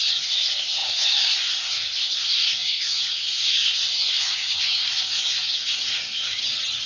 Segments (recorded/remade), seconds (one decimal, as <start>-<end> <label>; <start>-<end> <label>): 0.0-6.4 remade; 6.4-6.9 recorded